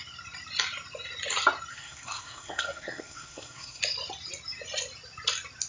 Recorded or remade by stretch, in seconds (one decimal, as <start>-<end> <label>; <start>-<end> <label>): 0.0-1.7 recorded; 1.7-3.8 remade; 3.8-5.7 recorded